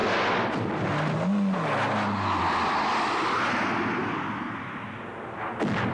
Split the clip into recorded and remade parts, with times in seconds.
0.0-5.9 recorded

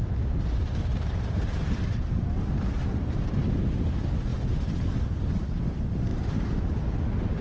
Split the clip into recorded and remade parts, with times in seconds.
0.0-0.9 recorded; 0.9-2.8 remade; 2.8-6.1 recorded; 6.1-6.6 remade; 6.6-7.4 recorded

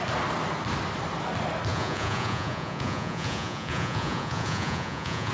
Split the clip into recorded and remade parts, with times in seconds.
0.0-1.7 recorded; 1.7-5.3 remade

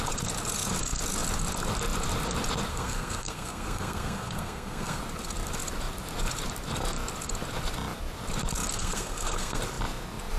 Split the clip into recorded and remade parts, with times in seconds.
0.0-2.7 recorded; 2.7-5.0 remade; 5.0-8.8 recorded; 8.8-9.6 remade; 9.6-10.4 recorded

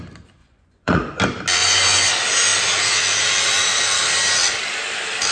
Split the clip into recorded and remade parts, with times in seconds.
0.0-0.4 recorded; 0.4-1.2 remade; 1.2-1.6 recorded; 1.6-2.1 remade; 2.1-5.3 recorded

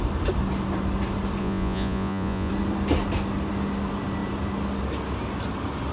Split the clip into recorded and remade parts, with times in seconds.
0.0-1.4 recorded; 1.4-2.5 remade; 2.5-5.9 recorded

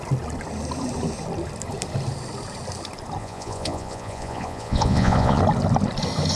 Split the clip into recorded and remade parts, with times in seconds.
0.0-3.2 recorded; 3.2-5.4 remade; 5.4-6.4 recorded

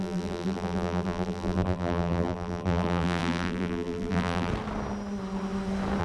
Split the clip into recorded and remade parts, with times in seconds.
0.0-4.5 remade; 4.5-6.0 recorded